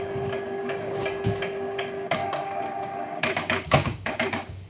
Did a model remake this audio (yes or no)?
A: yes